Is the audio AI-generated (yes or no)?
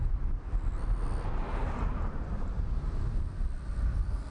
no